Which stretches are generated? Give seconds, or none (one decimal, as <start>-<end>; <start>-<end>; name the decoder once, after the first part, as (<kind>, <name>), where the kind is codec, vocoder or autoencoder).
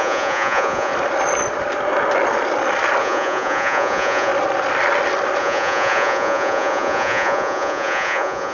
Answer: 0.0-0.9 (vocoder, Vocos); 3.0-4.3; 5.4-8.5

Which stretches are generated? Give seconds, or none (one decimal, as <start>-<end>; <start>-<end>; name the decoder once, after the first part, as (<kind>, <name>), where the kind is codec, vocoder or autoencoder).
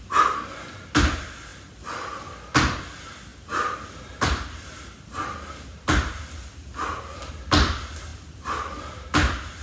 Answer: none